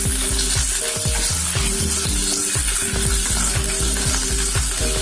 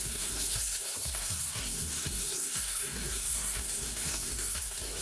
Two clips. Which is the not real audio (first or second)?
second